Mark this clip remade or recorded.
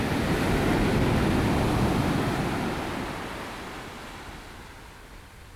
recorded